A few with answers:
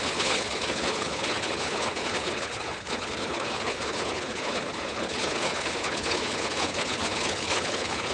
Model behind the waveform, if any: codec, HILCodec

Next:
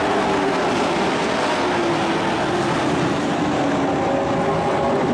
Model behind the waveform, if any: none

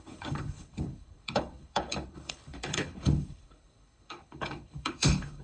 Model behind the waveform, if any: codec, HILCodec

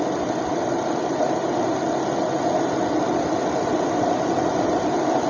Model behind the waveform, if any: none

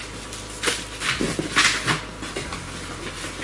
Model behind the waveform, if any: none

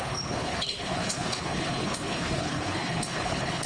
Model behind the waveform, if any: codec, HILCodec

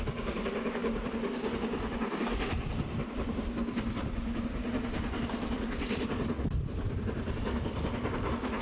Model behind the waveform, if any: none